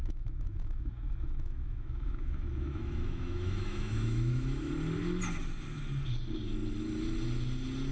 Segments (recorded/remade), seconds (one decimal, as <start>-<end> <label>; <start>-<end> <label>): 0.0-4.7 remade; 4.7-7.9 recorded

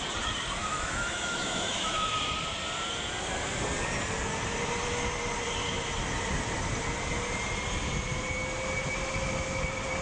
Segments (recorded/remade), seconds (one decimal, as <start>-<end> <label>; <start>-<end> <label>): 0.0-0.6 recorded; 0.6-2.1 remade; 2.1-10.0 recorded

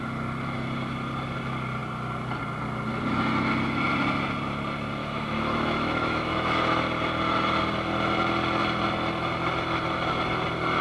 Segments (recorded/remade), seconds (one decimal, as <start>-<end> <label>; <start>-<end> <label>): 0.0-5.0 recorded; 5.0-6.8 remade; 6.8-10.8 recorded

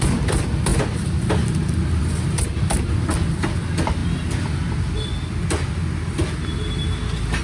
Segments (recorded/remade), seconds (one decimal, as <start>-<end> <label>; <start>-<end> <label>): 0.0-7.4 recorded

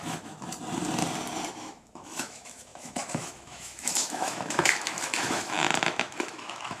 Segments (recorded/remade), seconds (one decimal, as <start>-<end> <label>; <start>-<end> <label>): 0.0-0.5 remade; 0.5-1.5 recorded; 1.5-6.8 remade

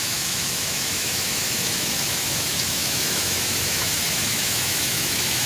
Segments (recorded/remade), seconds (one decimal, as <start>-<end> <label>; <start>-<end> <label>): 0.0-5.5 remade